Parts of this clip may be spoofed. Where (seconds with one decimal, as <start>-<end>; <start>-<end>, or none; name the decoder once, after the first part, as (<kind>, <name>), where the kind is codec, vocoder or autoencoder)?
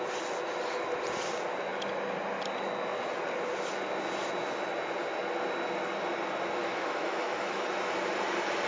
6.6-7.7 (autoencoder, DAC-VAE)